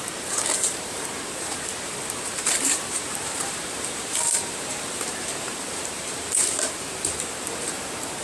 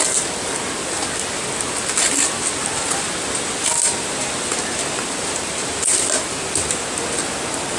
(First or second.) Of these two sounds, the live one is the second